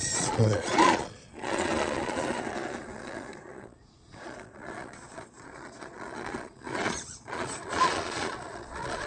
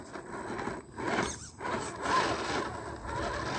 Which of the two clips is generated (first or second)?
first